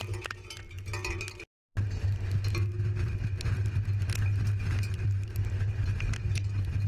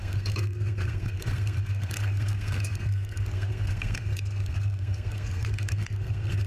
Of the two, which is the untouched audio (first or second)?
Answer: first